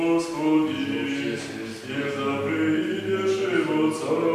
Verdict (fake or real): real